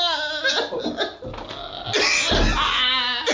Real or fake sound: real